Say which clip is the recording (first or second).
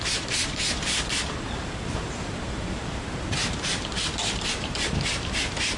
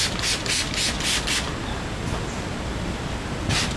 second